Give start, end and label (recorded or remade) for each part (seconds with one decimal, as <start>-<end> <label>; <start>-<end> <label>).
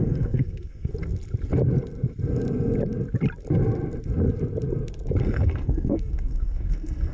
0.0-0.9 remade; 0.9-5.2 recorded; 5.2-7.1 remade